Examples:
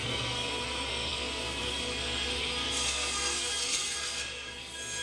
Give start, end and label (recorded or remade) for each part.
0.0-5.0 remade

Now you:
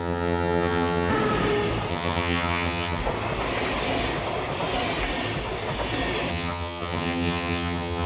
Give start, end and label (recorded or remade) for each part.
0.0-1.1 remade; 1.1-1.9 recorded; 1.9-3.0 remade; 3.0-6.3 recorded; 6.3-8.1 remade

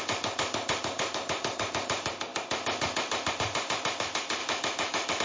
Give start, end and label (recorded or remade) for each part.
0.0-4.4 recorded; 4.4-5.2 remade

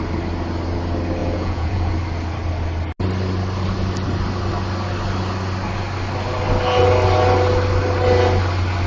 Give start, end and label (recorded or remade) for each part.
0.0-1.2 recorded; 1.2-1.9 remade; 1.9-8.9 recorded

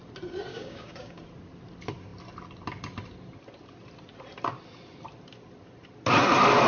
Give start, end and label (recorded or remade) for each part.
0.0-0.5 recorded; 0.5-1.2 remade; 1.2-6.7 recorded

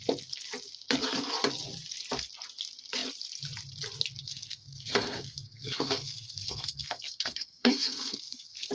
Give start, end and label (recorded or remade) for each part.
0.0-4.2 recorded; 4.2-8.7 remade

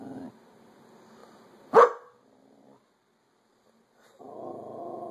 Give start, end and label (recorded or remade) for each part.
0.0-5.1 recorded

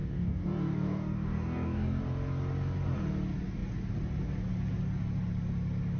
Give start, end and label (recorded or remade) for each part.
0.0-2.0 remade; 2.0-6.0 recorded